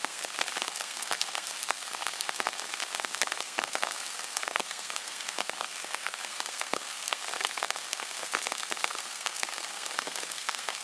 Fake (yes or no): yes